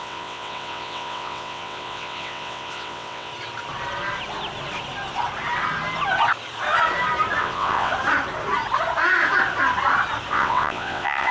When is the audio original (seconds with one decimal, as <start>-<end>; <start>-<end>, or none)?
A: 3.3-7.4; 7.9-10.3